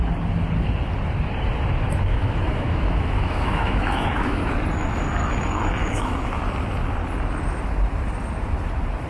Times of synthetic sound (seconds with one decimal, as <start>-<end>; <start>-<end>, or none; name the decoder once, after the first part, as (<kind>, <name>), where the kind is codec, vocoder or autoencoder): 2.1-4.5 (autoencoder, DAC-VAE); 5.8-6.4